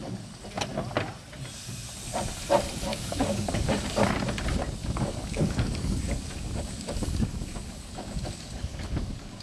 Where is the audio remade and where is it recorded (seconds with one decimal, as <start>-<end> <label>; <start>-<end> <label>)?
0.0-2.9 recorded; 2.9-4.1 remade; 4.1-4.8 recorded; 4.8-9.4 remade